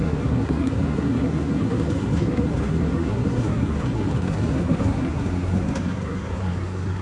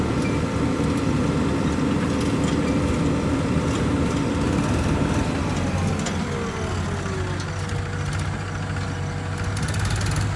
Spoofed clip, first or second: first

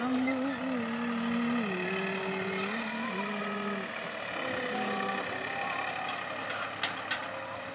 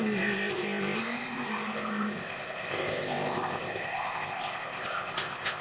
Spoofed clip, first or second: second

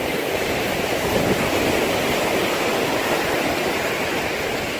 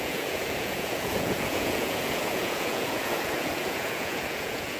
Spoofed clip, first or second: second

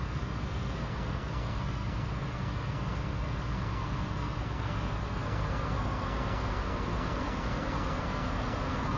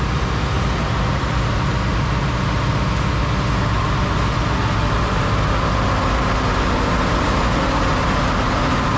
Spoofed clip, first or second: first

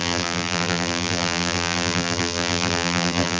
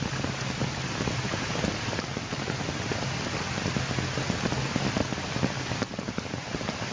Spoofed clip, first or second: first